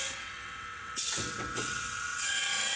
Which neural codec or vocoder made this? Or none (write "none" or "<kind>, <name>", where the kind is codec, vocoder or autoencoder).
vocoder, WaveNeXt